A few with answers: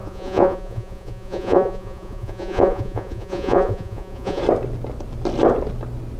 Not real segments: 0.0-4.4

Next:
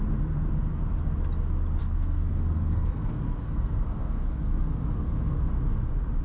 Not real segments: 1.8-5.5